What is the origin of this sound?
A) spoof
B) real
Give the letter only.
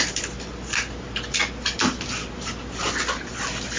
B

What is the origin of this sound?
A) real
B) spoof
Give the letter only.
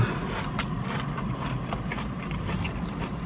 A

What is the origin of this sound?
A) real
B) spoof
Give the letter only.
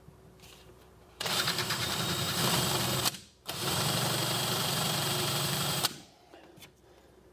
B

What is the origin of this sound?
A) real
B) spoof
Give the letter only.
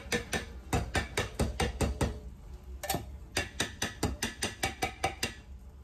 A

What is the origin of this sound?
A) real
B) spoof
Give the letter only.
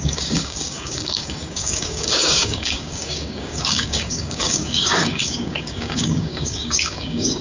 B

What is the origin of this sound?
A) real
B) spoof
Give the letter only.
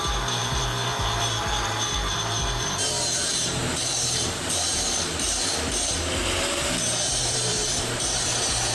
B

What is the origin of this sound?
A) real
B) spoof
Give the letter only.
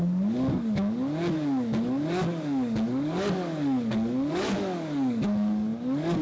B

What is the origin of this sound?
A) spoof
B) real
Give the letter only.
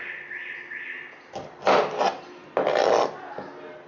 B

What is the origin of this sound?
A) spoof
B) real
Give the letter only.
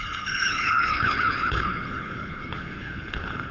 A